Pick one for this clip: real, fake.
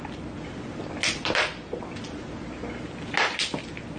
real